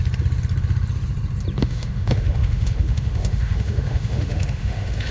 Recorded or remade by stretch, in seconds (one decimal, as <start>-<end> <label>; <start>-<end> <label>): 0.0-1.6 recorded; 1.6-5.1 remade